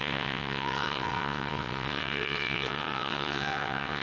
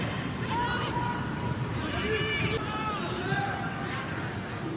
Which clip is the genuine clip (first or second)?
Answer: second